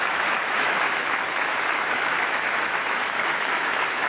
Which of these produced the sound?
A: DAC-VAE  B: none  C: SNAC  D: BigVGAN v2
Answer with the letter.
A